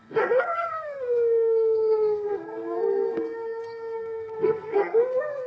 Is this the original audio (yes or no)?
no